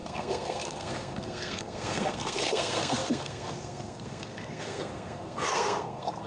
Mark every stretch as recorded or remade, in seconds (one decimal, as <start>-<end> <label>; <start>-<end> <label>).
0.0-6.3 remade